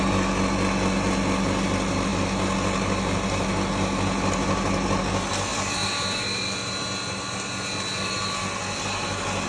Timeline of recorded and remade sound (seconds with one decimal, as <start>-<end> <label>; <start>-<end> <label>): 0.0-9.5 recorded